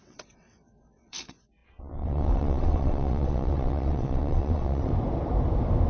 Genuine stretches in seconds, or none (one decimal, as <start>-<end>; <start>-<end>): 4.9-5.9